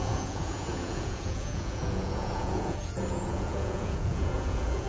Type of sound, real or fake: fake